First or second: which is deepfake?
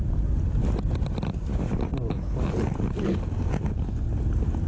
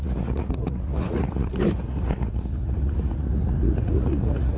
second